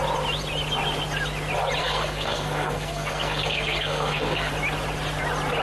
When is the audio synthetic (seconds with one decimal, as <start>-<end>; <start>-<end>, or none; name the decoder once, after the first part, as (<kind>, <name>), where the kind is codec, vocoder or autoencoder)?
1.8-4.5 (codec, SNAC)